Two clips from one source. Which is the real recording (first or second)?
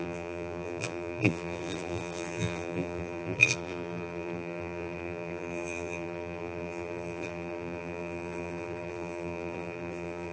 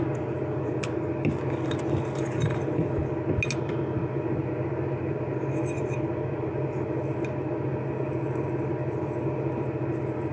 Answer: second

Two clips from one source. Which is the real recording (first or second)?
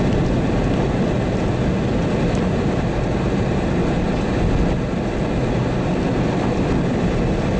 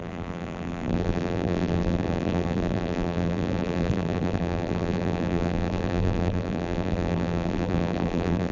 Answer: first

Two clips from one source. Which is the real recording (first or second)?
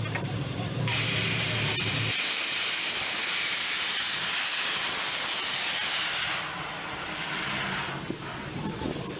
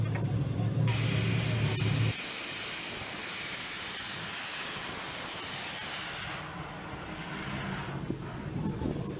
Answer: second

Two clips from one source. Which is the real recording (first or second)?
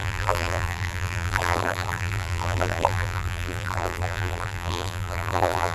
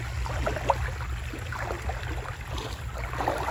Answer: second